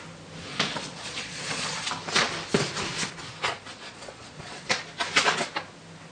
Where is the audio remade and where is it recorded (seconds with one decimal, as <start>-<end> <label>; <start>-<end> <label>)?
0.0-0.5 recorded; 0.5-1.9 remade; 1.9-3.7 recorded; 3.7-4.8 remade; 4.8-6.1 recorded